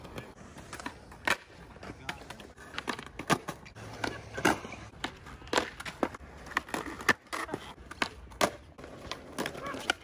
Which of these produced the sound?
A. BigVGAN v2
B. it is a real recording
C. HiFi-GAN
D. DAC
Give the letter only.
B